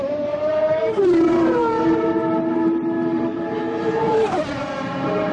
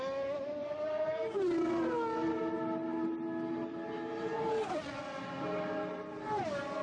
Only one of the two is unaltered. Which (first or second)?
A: second